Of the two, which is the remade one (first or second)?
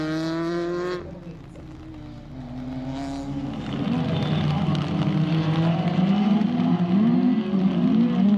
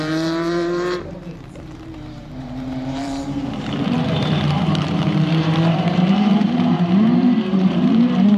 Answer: second